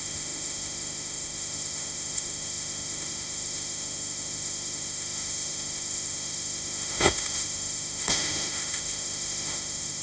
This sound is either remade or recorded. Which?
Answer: remade